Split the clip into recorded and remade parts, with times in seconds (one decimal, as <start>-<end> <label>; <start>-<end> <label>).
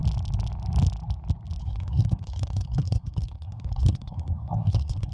0.0-1.6 recorded; 1.6-5.1 remade